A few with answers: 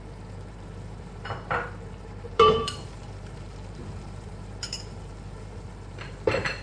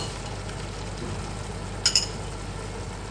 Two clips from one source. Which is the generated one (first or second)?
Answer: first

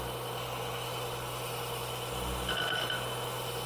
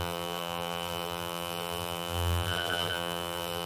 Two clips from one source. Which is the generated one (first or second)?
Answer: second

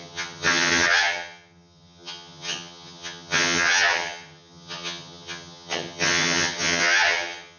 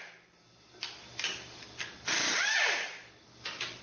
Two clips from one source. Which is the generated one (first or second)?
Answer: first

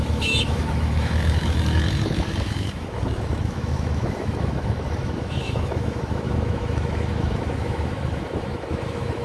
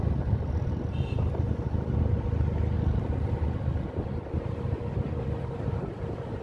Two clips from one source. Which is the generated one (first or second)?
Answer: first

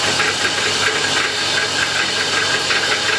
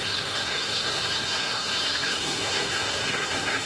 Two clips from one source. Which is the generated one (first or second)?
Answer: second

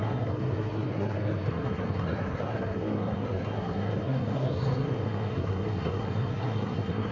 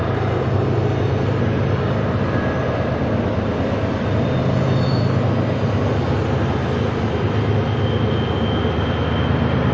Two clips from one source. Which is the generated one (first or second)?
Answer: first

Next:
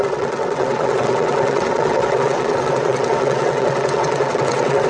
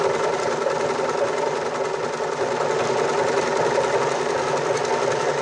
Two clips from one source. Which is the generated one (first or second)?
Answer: first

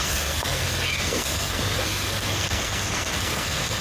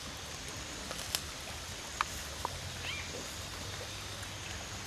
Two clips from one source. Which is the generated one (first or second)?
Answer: first